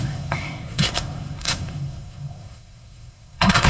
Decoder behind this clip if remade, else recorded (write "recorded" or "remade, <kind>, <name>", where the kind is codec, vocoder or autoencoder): remade, codec, SNAC